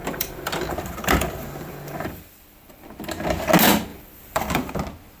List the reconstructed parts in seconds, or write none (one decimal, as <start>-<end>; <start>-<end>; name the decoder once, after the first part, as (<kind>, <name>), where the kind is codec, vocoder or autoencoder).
0.0-3.1 (vocoder, BigVGAN v2); 3.9-4.7